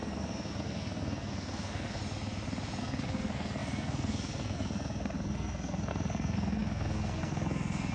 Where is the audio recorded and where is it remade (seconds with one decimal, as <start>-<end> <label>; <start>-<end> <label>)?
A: 0.0-2.0 remade; 2.0-2.8 recorded; 2.8-7.9 remade